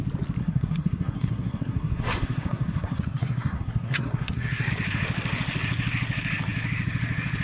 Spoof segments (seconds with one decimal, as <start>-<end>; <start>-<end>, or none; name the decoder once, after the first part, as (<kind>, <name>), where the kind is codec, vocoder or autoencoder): 0.4-4.7 (codec, SNAC)

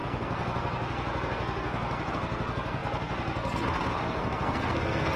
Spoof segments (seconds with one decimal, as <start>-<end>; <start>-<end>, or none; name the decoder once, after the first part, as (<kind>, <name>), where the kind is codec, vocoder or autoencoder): 0.0-5.2 (codec, SNAC)

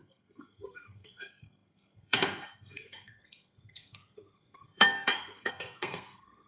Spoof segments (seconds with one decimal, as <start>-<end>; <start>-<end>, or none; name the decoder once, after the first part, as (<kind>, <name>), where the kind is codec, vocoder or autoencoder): 0.0-6.5 (codec, SNAC)

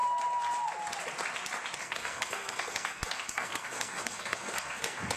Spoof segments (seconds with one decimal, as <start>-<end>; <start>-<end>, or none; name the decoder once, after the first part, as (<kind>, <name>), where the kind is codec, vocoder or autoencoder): 1.8-5.2 (codec, SNAC)